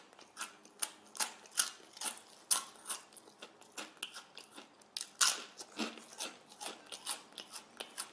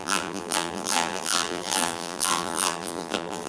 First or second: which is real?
first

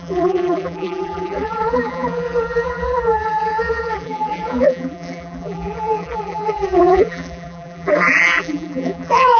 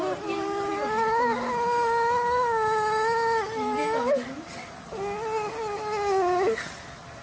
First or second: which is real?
second